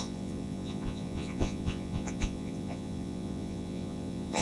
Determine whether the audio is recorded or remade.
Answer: remade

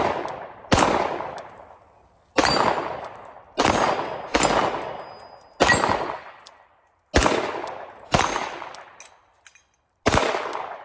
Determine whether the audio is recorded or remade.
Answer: recorded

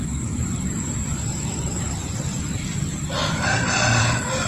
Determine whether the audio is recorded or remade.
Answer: remade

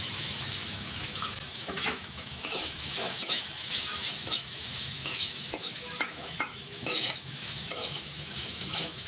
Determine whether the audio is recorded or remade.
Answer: remade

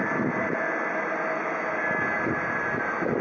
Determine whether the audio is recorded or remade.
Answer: recorded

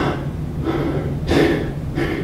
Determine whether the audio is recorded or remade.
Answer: recorded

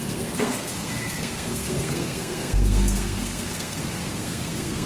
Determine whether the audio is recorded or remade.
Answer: remade